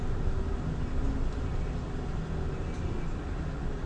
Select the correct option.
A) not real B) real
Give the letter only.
B